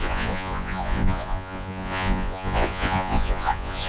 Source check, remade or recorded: remade